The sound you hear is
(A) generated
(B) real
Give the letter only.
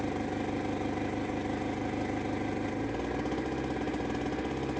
B